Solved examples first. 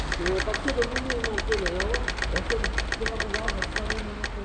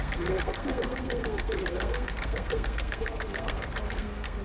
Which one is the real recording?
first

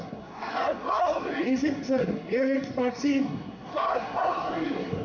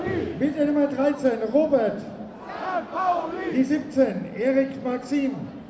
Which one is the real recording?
second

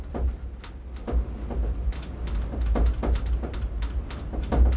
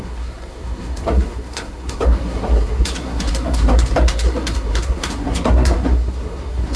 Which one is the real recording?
first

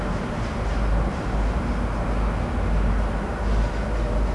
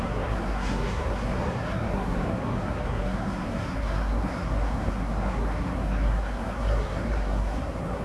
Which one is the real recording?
first